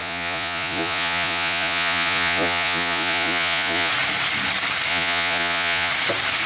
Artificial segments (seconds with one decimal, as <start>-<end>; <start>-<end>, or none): 0.0-3.9; 4.9-5.9

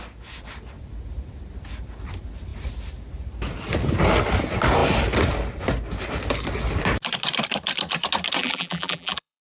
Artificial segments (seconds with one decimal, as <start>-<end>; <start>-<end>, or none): 8.4-9.4

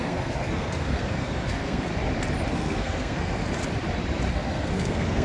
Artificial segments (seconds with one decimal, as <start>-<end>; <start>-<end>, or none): 0.0-1.9; 2.5-3.6; 4.3-5.2